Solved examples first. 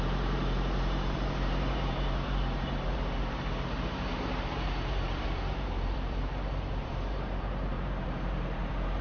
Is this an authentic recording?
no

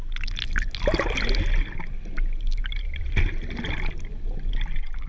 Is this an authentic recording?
yes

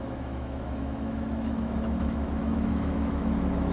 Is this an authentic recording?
no